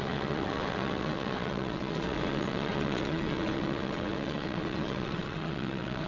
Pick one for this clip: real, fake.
fake